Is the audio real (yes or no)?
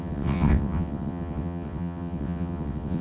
no